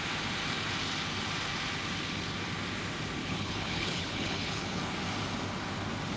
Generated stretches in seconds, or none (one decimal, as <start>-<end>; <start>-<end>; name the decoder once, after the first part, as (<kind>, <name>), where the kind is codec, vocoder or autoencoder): 3.2-4.8 (codec, HILCodec)